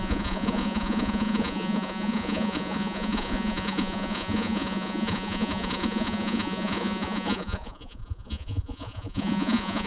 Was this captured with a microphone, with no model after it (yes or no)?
no